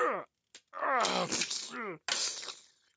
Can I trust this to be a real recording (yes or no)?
yes